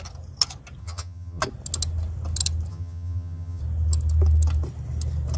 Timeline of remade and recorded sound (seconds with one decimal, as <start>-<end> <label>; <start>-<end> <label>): 0.0-0.8 recorded; 0.8-1.4 remade; 1.4-2.7 recorded; 2.7-3.6 remade; 3.6-5.4 recorded